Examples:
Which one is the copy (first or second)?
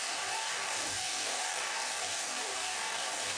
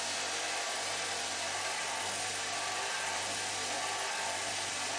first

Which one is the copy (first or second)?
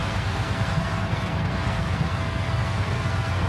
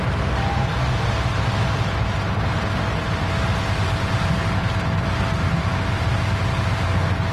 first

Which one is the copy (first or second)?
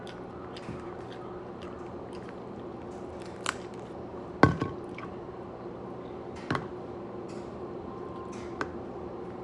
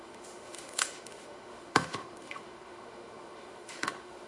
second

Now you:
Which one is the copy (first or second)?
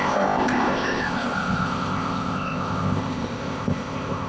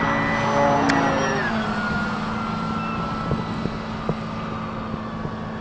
first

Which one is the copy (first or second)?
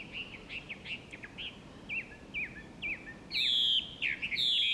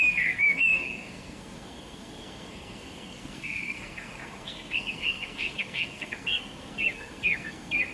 second